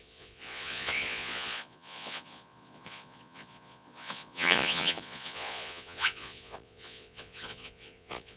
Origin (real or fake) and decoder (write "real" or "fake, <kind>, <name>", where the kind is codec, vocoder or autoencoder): fake, vocoder, Vocos